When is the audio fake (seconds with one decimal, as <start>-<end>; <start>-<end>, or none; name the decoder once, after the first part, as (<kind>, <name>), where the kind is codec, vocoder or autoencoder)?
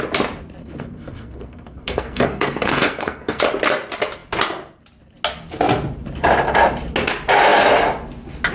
0.6-3.4 (codec, SNAC)